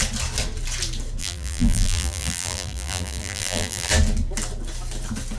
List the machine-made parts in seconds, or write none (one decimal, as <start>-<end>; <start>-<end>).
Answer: 1.2-3.9